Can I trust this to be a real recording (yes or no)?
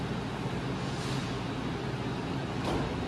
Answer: yes